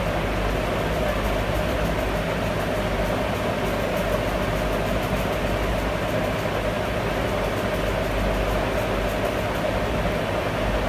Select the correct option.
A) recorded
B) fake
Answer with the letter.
A